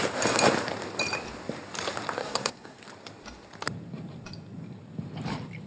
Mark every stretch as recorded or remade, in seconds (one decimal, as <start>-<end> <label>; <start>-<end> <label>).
0.0-2.2 recorded; 2.2-2.8 remade; 2.8-5.7 recorded